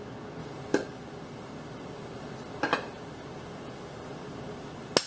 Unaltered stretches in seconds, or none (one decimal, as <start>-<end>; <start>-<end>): 0.0-5.1